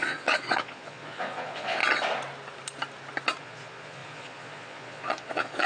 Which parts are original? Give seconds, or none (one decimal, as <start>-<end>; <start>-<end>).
1.8-3.4